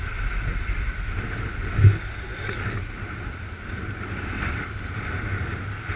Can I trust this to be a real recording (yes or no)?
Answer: yes